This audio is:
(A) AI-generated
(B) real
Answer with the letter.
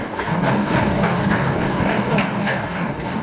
A